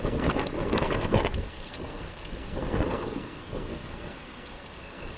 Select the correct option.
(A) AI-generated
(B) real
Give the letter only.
A